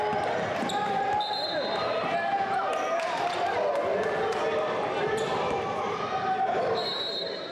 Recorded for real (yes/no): no